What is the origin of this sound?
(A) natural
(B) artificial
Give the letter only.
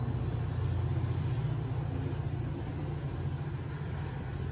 A